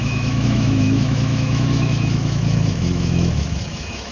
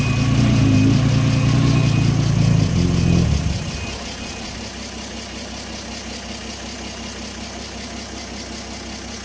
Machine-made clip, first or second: first